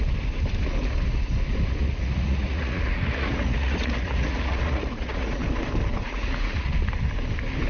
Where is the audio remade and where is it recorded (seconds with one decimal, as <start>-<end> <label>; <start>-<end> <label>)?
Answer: 0.0-1.8 recorded; 1.8-5.4 remade; 5.4-6.0 recorded; 6.0-6.7 remade; 6.7-7.7 recorded